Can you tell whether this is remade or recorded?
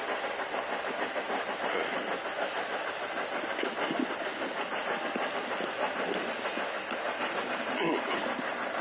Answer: remade